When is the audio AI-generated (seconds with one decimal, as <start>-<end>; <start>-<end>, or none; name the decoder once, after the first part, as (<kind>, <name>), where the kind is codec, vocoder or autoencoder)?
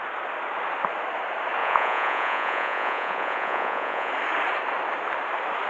1.6-4.1 (vocoder, Vocos)